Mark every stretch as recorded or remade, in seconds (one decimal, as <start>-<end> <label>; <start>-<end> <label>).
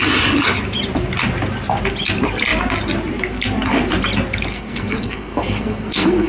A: 0.0-4.5 recorded; 4.5-6.3 remade